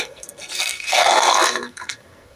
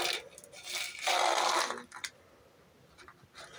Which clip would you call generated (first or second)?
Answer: first